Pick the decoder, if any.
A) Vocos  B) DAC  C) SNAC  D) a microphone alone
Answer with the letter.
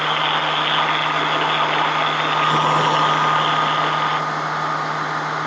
D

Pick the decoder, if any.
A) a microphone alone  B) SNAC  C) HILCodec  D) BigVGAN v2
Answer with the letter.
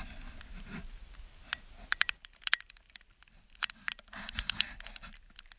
A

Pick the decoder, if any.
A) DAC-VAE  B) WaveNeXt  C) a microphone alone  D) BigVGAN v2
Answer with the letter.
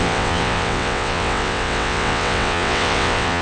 B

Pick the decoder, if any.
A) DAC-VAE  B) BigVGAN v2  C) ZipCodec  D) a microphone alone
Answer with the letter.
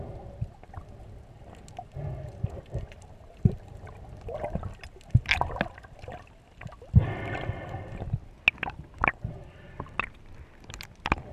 D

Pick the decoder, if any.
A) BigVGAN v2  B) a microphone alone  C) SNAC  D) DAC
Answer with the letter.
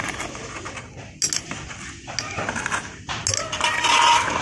B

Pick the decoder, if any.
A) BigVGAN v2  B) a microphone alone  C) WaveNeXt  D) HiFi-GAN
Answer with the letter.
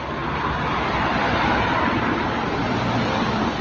B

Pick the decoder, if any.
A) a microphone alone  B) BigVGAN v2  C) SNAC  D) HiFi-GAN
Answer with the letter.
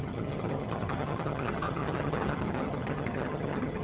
D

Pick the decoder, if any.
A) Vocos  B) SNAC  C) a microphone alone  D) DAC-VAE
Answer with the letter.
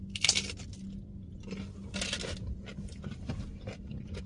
C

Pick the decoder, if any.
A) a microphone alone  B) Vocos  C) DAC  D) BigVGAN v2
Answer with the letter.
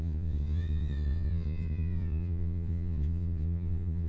B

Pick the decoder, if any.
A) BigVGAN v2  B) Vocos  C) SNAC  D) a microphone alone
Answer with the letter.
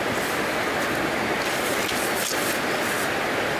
D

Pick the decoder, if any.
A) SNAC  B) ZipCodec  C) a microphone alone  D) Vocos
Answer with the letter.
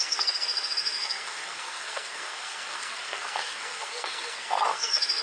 A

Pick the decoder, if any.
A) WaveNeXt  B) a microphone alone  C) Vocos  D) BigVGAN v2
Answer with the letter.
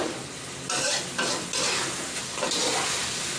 D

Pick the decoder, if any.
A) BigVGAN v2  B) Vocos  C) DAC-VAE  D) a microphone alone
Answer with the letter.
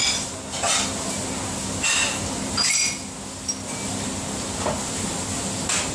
D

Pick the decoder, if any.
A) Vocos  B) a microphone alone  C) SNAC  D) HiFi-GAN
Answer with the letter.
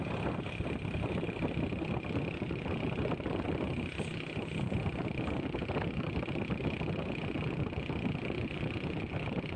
B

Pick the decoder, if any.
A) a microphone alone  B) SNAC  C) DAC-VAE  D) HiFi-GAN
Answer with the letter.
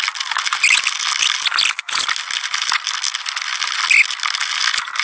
A